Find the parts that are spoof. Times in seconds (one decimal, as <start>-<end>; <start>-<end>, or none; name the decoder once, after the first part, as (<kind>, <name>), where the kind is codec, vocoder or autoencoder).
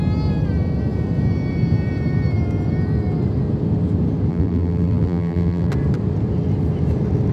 4.3-5.7 (vocoder, BigVGAN v2)